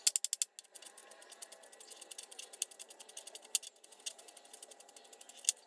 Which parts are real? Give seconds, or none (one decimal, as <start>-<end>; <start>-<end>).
0.0-5.7